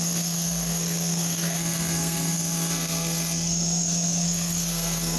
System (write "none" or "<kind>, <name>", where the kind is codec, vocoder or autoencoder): codec, SNAC